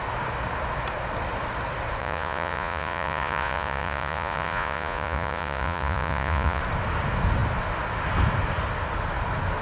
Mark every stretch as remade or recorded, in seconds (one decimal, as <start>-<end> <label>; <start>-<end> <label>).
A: 0.0-2.0 recorded; 2.0-6.6 remade; 6.6-9.6 recorded